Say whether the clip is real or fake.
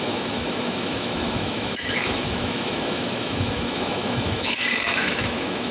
fake